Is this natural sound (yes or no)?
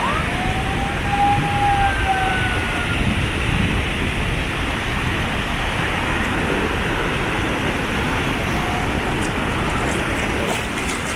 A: yes